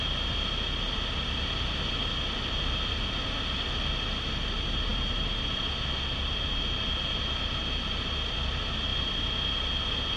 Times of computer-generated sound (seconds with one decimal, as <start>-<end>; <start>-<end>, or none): none